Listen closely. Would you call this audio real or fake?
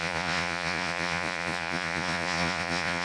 fake